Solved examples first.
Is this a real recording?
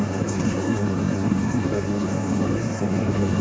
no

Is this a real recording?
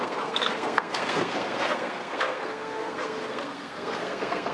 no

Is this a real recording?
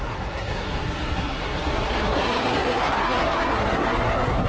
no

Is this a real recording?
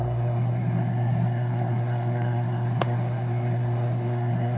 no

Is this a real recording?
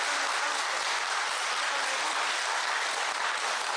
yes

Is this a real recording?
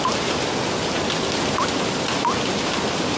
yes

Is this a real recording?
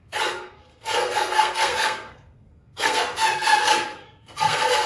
no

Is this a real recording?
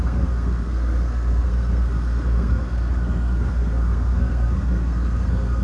no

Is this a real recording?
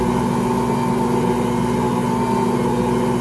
yes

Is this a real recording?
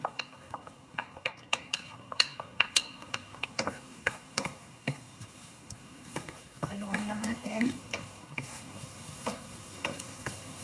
no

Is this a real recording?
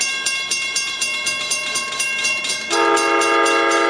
yes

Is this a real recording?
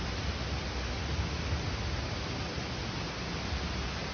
yes